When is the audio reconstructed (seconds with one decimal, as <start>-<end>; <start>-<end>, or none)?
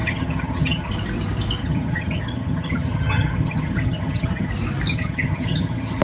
0.0-0.9; 1.6-4.5; 4.9-6.0